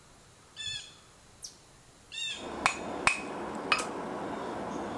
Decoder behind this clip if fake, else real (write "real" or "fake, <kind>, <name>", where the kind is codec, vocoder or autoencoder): real